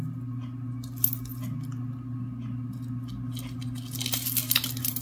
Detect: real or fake real